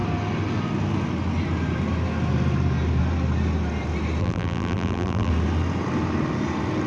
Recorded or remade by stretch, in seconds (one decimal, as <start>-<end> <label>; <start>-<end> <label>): 0.0-4.2 recorded; 4.2-5.3 remade; 5.3-6.9 recorded